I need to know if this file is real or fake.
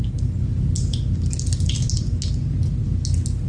real